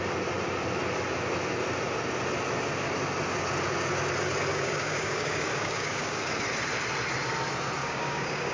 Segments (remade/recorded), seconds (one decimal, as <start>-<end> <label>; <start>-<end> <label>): 0.0-4.5 recorded; 4.5-6.3 remade; 6.3-7.8 recorded; 7.8-8.5 remade